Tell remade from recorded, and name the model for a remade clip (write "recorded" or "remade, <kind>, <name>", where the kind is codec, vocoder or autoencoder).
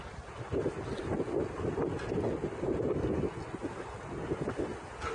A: recorded